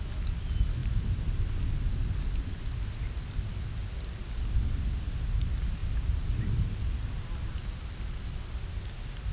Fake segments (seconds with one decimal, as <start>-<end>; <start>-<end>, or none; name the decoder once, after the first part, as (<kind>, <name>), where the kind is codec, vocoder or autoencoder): none